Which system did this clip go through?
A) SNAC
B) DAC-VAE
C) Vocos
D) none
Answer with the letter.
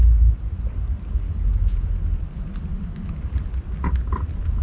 D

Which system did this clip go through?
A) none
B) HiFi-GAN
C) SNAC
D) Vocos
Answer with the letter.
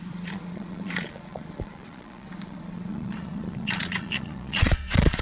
D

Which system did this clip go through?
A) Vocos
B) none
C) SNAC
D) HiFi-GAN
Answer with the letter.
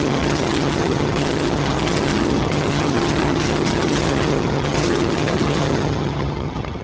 D